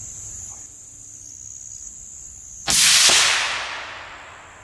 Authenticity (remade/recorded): recorded